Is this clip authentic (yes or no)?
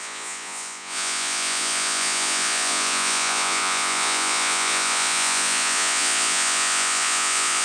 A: no